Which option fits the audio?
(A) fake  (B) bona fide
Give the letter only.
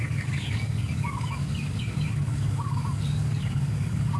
A